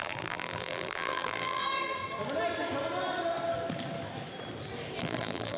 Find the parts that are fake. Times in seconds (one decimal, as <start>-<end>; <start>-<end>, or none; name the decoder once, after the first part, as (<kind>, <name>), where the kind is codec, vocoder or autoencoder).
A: 0.0-1.6 (vocoder, BigVGAN v2); 5.0-5.6